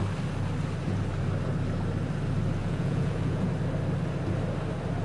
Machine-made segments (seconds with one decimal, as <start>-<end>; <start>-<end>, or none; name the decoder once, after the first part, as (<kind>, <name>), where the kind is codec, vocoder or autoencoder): 2.6-3.5 (vocoder, Vocos)